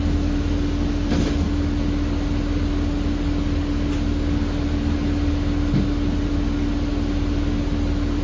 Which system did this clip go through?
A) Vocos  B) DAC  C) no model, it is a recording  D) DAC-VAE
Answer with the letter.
C